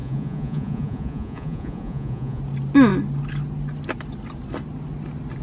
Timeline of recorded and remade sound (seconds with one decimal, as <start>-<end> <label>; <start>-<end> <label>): 0.0-2.4 remade; 2.4-5.4 recorded